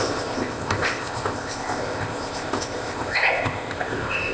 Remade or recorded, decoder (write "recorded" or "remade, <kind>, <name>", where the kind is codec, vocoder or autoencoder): remade, codec, ZipCodec